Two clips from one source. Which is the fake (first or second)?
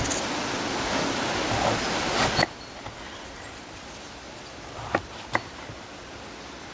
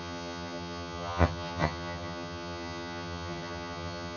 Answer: second